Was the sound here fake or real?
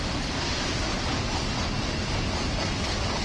real